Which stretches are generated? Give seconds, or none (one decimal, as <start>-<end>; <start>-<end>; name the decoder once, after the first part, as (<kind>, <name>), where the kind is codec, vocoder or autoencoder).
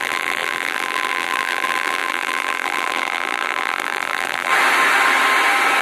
0.0-4.5 (vocoder, BigVGAN v2)